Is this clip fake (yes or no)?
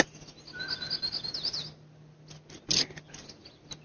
no